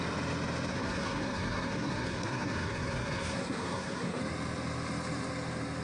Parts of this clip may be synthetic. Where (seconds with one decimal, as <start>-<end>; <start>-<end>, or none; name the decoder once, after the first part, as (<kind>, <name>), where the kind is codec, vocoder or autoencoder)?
0.7-4.2 (codec, SNAC)